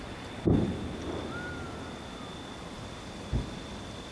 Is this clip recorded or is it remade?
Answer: recorded